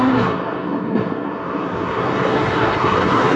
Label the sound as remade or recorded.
remade